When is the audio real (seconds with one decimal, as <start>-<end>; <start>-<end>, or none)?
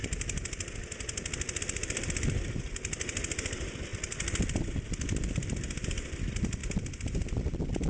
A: 0.0-1.6; 6.6-7.3